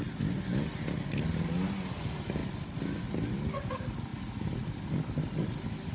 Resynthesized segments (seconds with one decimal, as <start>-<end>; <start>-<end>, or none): none